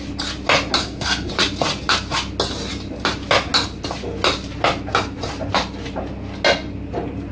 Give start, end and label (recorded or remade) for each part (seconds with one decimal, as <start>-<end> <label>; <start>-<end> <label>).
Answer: 0.0-0.8 recorded; 0.8-1.3 remade; 1.3-7.3 recorded